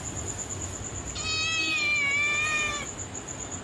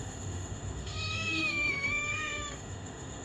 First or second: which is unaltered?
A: first